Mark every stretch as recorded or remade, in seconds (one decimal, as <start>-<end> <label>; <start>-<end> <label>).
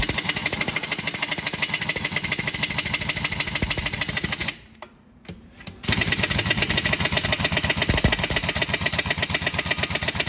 0.0-10.3 recorded